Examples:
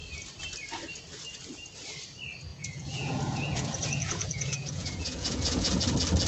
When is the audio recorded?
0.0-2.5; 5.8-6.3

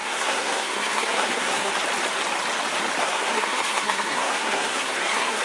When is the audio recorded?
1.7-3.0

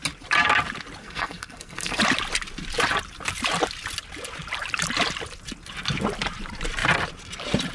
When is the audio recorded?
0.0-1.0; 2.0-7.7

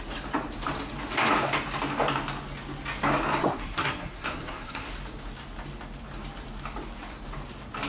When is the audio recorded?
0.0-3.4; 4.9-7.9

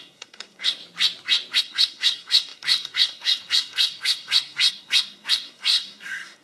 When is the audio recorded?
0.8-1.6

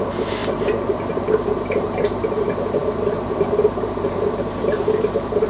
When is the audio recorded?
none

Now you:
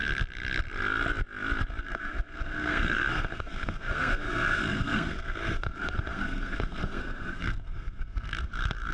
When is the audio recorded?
0.0-1.8

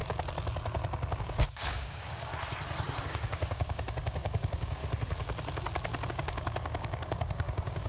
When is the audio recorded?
0.0-1.2; 2.3-3.0; 4.8-6.1